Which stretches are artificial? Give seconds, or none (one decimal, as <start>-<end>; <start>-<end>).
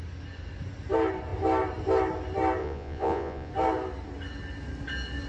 2.6-3.5